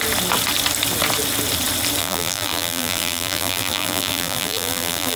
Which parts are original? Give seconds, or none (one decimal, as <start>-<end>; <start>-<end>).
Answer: 0.0-2.0